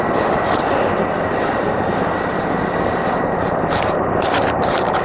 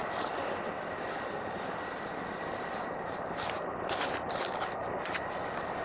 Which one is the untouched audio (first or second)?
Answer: first